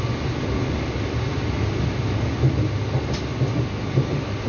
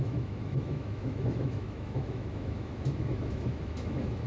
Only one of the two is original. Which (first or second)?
first